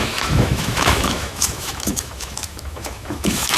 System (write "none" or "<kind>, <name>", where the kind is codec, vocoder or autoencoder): autoencoder, DAC-VAE